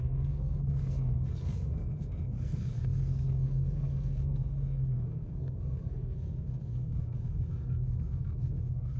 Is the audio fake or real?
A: fake